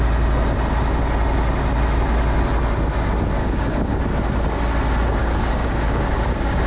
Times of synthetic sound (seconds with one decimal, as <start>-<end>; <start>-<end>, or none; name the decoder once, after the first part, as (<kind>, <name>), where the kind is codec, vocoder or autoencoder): 3.4-4.0 (codec, DAC); 5.2-6.7